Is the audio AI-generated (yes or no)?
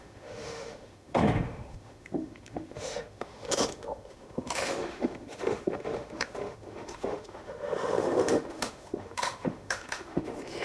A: yes